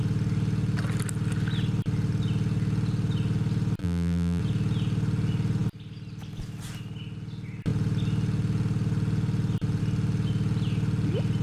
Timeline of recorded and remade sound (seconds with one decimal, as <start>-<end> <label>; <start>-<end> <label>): 0.0-3.8 recorded; 3.8-4.4 remade; 4.4-11.4 recorded